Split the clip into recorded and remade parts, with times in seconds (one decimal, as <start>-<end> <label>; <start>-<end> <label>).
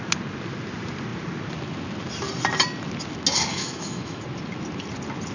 0.0-3.5 recorded; 3.5-4.2 remade; 4.2-5.3 recorded